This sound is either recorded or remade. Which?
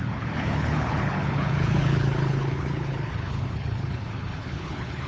remade